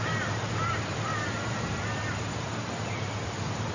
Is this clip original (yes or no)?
no